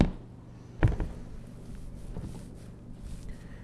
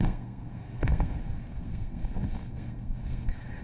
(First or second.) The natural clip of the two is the first